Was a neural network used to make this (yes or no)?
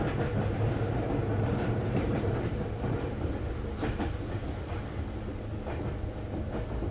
no